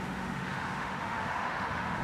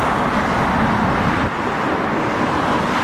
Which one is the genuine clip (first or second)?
second